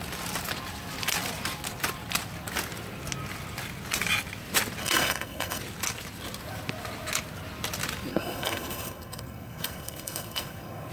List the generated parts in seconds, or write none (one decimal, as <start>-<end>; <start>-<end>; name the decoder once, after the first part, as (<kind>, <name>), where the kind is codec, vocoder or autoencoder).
4.8-5.6 (codec, SNAC); 8.1-10.9